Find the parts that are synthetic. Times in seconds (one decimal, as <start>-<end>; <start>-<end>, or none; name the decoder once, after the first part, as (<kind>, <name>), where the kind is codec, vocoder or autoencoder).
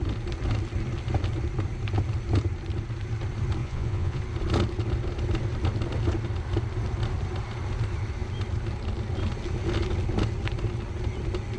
3.6-4.2 (vocoder, Vocos)